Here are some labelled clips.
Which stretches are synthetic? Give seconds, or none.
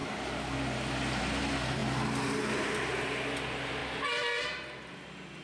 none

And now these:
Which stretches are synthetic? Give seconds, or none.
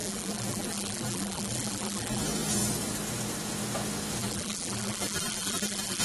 0.0-2.2 (vocoder, BigVGAN v2); 4.2-6.0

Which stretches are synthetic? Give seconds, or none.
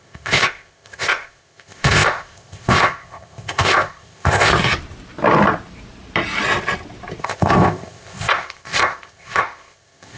0.0-4.5 (codec, ZipCodec); 7.2-10.2